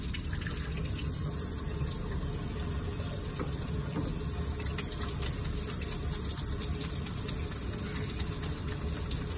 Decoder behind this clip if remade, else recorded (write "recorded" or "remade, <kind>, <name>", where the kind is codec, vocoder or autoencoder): recorded